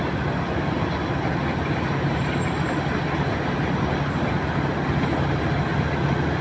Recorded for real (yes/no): yes